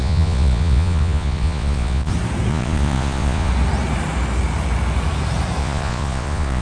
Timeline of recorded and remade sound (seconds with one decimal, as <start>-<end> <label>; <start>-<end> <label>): 0.0-2.1 remade; 2.1-2.5 recorded; 2.5-3.5 remade; 3.5-5.6 recorded; 5.6-6.6 remade